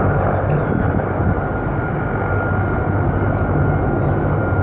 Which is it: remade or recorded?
recorded